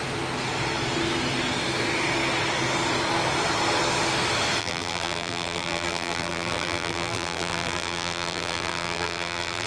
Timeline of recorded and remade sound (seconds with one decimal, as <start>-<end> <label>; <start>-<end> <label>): 0.0-4.6 recorded; 4.6-9.7 remade